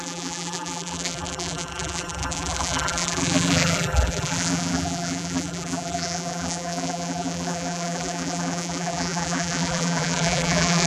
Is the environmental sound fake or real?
fake